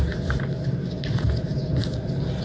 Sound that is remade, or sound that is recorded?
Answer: recorded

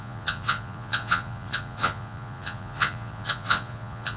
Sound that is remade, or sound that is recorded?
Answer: remade